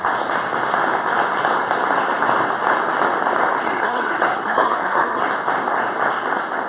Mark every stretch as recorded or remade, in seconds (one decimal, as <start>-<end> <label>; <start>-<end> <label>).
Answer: 0.0-3.6 recorded; 3.6-5.2 remade; 5.2-6.7 recorded